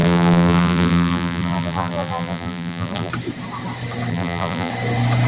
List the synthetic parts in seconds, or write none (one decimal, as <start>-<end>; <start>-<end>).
0.0-3.1; 4.1-4.7